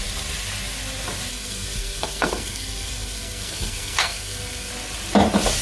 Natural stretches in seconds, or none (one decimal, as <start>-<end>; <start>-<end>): 0.0-1.3; 4.7-5.6